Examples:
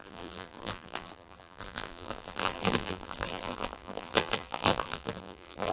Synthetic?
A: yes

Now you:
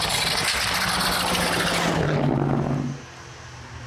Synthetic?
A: no